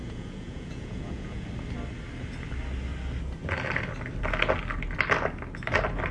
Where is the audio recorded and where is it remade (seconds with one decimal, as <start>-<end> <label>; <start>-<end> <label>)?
0.0-1.5 remade; 1.5-6.1 recorded